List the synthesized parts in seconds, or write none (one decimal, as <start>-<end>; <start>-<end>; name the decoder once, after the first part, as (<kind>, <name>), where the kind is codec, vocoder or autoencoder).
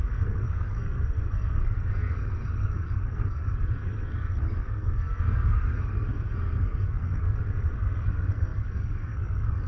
0.0-9.7 (codec, SNAC)